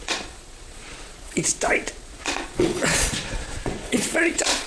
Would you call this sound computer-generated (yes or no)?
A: yes